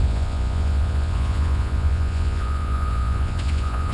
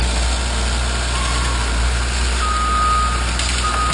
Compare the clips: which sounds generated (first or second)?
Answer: first